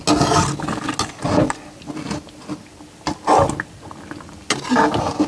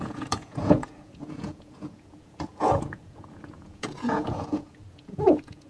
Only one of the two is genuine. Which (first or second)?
first